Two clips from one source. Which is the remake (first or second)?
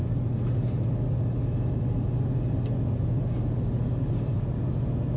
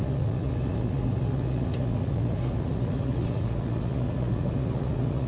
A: second